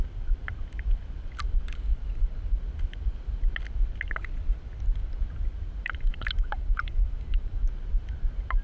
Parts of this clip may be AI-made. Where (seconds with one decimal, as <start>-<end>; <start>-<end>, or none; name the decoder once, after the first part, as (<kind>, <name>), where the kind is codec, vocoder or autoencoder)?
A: 5.8-7.6 (vocoder, BigVGAN v2)